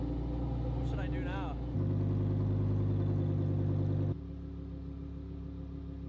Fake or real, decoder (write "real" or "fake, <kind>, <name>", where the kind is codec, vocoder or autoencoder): real